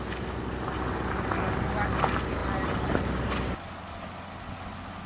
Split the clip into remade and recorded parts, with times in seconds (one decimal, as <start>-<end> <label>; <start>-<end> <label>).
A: 0.0-5.1 recorded